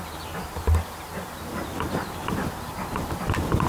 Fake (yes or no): yes